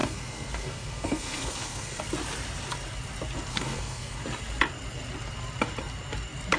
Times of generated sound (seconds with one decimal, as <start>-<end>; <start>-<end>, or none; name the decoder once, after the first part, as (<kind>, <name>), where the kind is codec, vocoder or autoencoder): 0.0-2.0 (codec, SNAC); 3.5-4.2